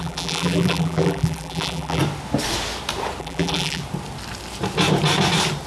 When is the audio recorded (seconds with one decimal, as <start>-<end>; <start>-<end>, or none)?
2.0-3.2; 3.8-5.7